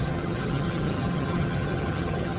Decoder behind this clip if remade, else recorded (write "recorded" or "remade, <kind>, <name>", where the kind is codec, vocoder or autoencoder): remade, vocoder, HiFi-GAN